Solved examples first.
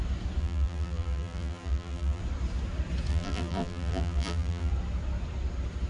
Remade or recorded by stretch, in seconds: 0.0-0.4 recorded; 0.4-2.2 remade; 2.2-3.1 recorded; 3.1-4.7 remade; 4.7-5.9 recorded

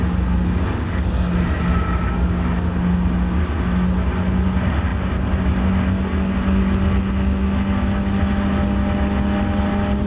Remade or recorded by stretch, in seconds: 0.0-10.1 recorded